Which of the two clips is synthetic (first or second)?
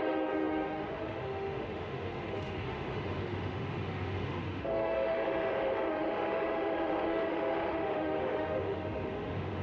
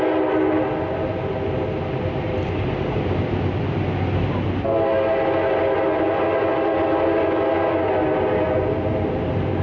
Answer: first